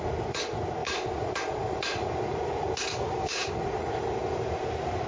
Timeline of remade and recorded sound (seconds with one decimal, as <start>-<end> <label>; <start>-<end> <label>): 0.0-2.9 recorded; 2.9-3.5 remade; 3.5-5.1 recorded

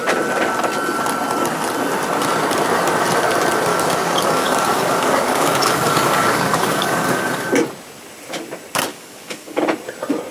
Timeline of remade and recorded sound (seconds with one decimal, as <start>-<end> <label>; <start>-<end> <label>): 0.0-3.7 recorded; 3.7-7.5 remade; 7.5-8.9 recorded; 8.9-9.6 remade; 9.6-10.3 recorded